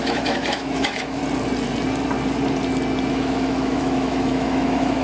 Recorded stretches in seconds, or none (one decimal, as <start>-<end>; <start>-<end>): 1.2-3.1

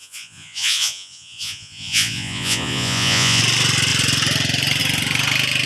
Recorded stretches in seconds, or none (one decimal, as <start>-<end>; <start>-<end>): 3.4-5.7